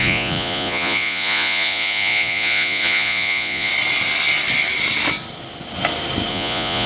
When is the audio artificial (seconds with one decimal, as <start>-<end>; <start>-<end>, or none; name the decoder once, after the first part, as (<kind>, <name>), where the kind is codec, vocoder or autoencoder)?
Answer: 0.0-3.7 (vocoder, Vocos); 6.3-6.9